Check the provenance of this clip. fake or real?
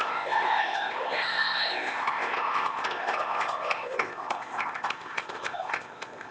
fake